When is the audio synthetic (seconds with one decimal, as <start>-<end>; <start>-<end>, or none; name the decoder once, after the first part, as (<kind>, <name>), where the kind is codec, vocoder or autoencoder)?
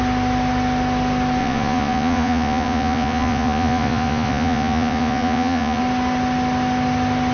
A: 1.4-5.8 (vocoder, Vocos)